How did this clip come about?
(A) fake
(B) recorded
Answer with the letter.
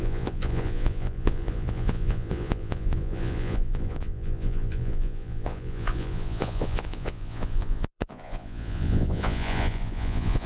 A